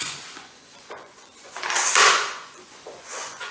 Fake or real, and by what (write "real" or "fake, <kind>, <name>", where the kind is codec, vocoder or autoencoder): fake, vocoder, Vocos